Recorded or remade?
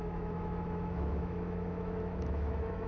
remade